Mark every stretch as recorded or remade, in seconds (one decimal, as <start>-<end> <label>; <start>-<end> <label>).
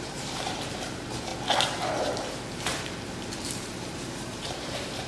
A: 0.0-1.3 remade; 1.3-2.8 recorded; 2.8-5.1 remade